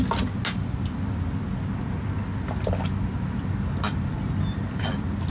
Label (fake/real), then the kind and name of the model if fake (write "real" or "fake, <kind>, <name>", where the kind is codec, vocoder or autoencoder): real